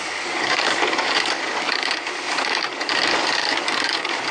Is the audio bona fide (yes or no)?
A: no